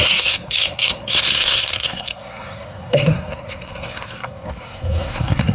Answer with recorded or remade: remade